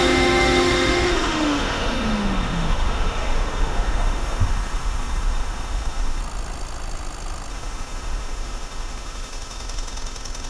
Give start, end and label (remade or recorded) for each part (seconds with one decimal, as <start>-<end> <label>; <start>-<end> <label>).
0.0-6.2 remade; 6.2-7.5 recorded; 7.5-10.5 remade